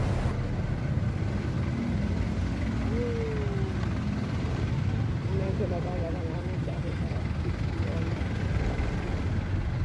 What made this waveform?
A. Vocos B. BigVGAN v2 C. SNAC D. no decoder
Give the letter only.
D